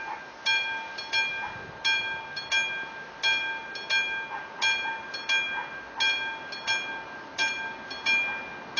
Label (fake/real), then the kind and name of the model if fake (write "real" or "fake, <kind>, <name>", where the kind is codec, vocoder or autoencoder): real